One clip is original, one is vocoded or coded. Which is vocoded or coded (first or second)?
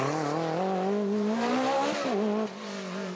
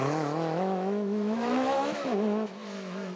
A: second